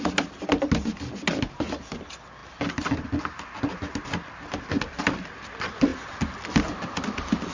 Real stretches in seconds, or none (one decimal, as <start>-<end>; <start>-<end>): 0.0-7.5